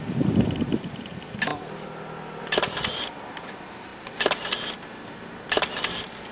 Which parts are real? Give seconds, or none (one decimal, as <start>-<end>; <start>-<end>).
0.0-6.3

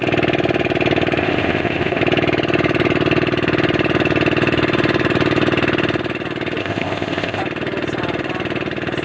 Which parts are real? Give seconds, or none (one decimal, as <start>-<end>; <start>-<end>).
0.0-1.2; 2.0-6.6; 7.4-9.0

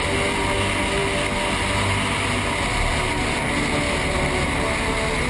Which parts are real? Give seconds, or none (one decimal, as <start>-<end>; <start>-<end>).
0.0-5.3

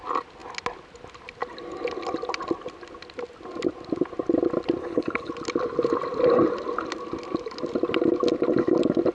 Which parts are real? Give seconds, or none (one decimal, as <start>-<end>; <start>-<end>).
0.0-4.8; 5.3-9.1

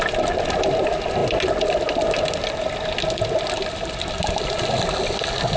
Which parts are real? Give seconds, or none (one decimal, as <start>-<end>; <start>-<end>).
0.0-5.6